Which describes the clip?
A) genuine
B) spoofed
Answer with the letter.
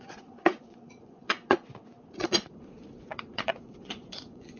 B